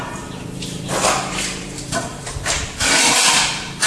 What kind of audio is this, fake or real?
fake